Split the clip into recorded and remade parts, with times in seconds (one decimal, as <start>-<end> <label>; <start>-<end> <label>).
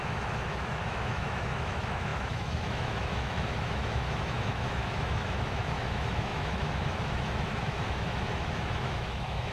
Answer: 0.0-9.5 remade